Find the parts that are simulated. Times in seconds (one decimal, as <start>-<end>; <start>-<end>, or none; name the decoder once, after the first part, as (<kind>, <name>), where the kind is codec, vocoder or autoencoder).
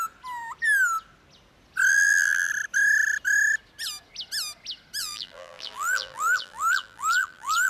1.9-2.5 (vocoder, BigVGAN v2); 5.0-7.7